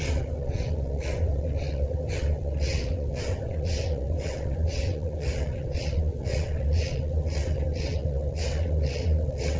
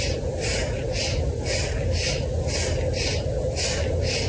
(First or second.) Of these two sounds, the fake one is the first